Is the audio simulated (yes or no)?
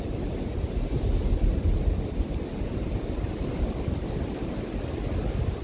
no